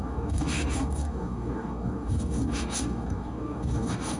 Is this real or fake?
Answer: fake